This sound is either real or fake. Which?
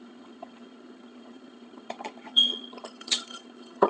fake